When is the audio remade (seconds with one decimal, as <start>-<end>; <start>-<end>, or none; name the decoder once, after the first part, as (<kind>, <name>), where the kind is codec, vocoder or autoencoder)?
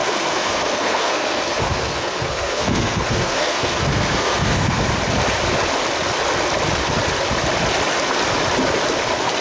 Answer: 0.0-4.9 (codec, SNAC)